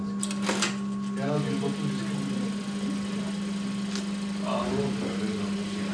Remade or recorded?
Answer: recorded